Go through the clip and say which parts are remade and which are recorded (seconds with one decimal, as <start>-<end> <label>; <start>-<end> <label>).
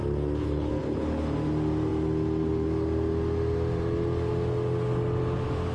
0.0-0.4 recorded; 0.4-1.3 remade; 1.3-5.7 recorded